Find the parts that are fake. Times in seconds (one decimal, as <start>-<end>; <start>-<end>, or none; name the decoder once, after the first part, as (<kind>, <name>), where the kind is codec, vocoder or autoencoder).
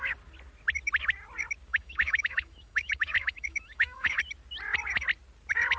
1.7-4.2 (autoencoder, DAC-VAE)